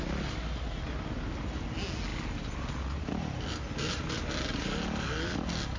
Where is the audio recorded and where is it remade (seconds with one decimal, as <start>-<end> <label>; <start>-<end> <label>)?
0.0-5.8 recorded